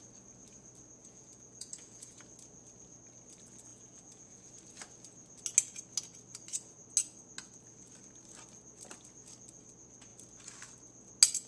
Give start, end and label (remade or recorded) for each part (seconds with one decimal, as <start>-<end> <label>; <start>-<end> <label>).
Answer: 0.0-1.0 recorded; 1.0-2.2 remade; 2.2-3.7 recorded; 3.7-4.5 remade; 4.5-11.5 recorded